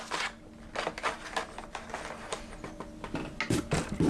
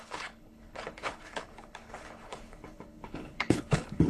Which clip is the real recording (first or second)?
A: first